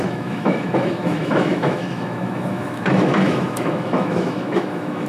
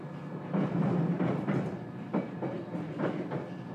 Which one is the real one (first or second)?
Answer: second